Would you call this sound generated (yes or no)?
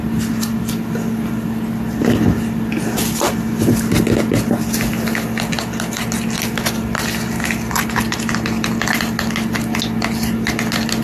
no